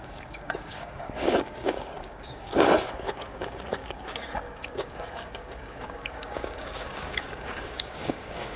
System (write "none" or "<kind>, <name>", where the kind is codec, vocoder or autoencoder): codec, DAC